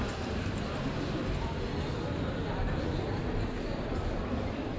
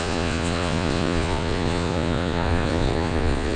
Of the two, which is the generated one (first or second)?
second